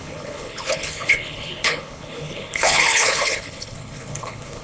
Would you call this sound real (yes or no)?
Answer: no